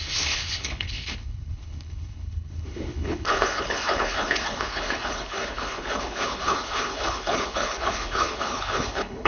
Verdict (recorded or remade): remade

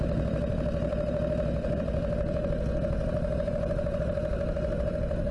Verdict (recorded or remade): recorded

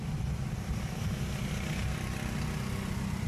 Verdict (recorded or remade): recorded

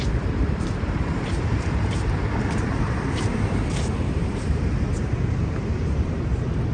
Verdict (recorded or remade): remade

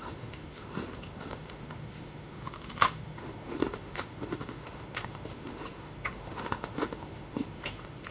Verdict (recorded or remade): remade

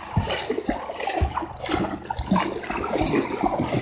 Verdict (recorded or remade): recorded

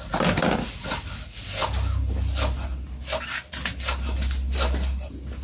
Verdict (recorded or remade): recorded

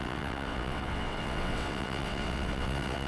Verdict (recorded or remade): remade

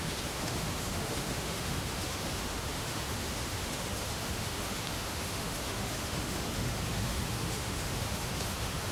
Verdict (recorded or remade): remade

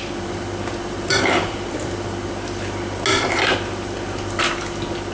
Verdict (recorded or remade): recorded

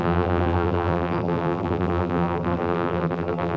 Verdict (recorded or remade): remade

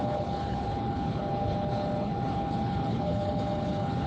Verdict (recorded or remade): remade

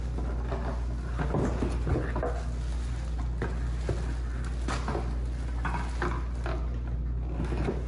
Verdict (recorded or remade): recorded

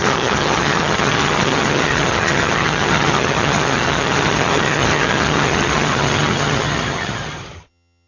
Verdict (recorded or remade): remade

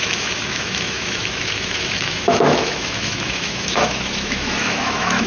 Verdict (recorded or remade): remade